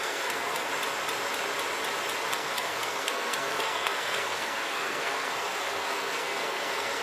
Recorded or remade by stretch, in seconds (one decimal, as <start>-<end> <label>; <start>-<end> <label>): 0.0-0.7 remade; 0.7-2.3 recorded; 2.3-7.0 remade